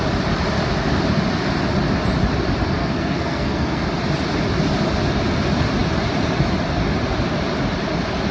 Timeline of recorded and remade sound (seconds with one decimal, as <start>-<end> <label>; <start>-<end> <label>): 0.0-2.8 recorded; 2.8-3.8 remade; 3.8-8.3 recorded